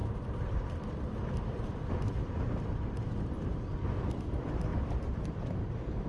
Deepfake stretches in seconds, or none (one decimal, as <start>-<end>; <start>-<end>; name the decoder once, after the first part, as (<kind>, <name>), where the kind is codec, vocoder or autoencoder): 0.0-3.6 (vocoder, BigVGAN v2); 4.7-6.1